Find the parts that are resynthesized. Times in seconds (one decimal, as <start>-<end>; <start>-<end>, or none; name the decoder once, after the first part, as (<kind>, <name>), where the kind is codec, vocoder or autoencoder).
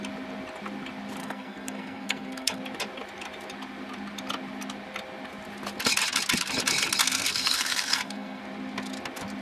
1.2-2.6 (codec, SNAC); 7.0-8.4